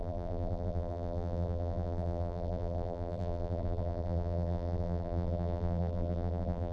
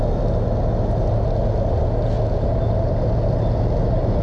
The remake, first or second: first